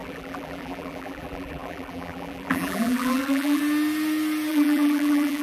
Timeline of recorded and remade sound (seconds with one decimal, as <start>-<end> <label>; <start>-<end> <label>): 0.0-3.6 remade; 3.6-4.5 recorded; 4.5-5.4 remade